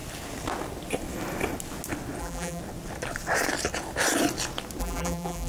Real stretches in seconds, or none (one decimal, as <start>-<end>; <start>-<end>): 0.0-2.2; 2.6-4.8